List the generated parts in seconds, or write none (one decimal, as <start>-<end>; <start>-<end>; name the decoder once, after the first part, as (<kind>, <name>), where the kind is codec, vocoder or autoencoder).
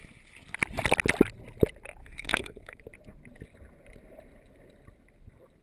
2.0-2.8 (codec, SNAC)